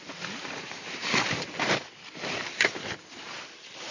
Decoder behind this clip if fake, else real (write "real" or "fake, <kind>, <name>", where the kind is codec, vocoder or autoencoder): real